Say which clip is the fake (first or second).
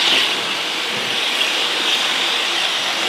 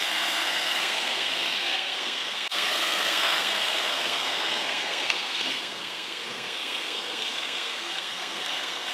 second